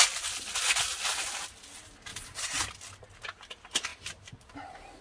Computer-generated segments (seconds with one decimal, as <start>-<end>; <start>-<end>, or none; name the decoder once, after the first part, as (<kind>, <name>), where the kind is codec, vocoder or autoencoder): 2.1-2.6 (vocoder, Vocos)